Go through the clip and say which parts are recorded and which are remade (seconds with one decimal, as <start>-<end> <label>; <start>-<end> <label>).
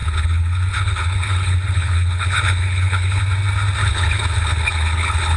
0.0-3.2 remade; 3.2-3.8 recorded; 3.8-5.4 remade